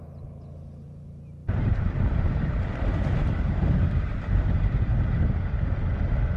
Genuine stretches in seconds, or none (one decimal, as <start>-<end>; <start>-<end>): 0.0-1.4; 5.2-6.4